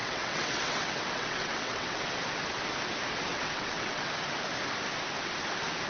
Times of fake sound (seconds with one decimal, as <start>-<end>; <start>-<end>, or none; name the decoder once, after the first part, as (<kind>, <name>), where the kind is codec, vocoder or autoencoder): 0.0-2.1 (vocoder, WaveNeXt); 3.3-4.1